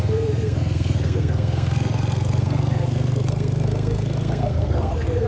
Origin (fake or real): fake